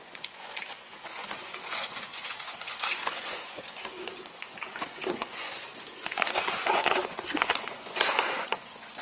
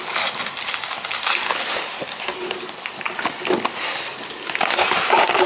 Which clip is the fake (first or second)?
first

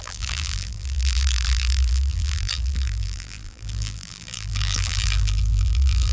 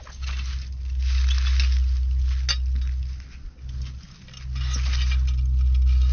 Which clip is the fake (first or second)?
first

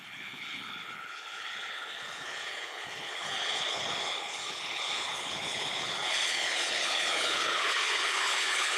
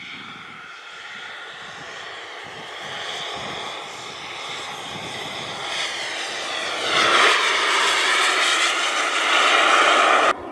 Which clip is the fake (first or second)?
first